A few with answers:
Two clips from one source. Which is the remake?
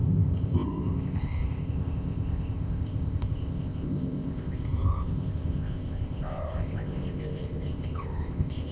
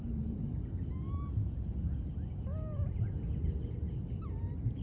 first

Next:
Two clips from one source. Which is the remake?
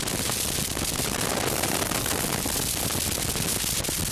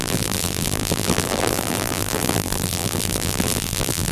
second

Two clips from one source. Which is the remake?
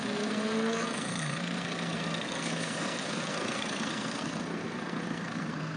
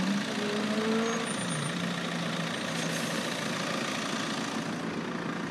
first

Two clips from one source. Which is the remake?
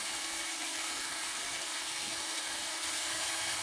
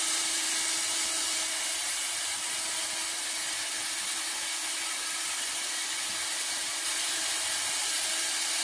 first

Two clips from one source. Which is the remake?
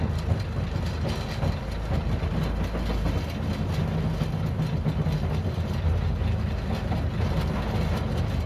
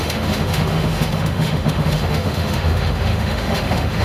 second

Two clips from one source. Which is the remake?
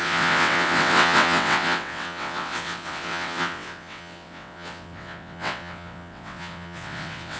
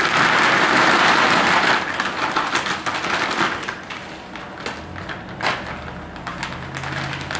first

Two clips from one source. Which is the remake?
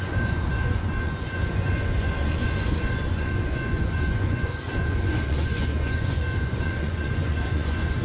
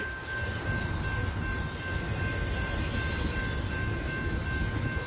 first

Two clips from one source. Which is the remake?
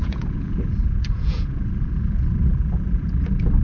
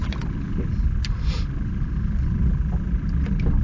first